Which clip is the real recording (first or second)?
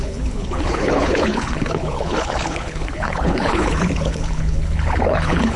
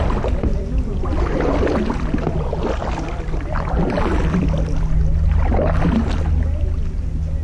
second